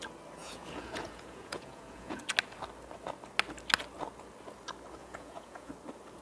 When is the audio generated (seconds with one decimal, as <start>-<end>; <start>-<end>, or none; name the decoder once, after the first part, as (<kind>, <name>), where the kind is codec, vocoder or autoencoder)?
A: 0.4-2.2 (vocoder, Vocos); 5.0-5.7